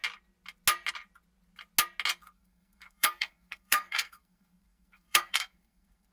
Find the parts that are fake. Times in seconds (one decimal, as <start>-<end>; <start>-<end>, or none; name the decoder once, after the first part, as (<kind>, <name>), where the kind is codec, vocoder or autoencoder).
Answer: 2.2-6.1 (codec, SNAC)